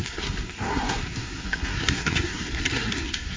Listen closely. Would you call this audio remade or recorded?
remade